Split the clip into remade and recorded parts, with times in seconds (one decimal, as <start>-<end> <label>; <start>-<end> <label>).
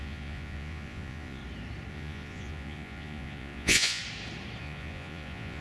0.0-1.4 remade; 1.4-1.9 recorded; 1.9-4.0 remade; 4.0-4.6 recorded; 4.6-5.6 remade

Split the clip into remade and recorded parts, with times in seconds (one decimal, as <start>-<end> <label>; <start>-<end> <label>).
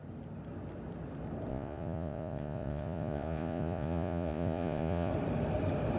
0.0-1.5 recorded; 1.5-5.1 remade; 5.1-6.0 recorded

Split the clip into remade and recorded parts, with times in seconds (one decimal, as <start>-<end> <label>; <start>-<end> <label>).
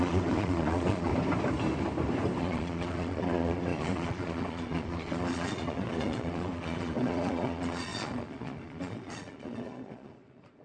0.0-1.1 remade; 1.1-2.4 recorded; 2.4-10.6 remade